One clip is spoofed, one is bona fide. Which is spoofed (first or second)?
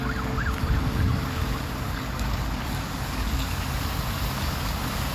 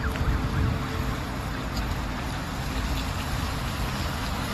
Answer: first